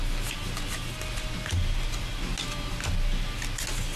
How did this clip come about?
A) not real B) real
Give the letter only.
B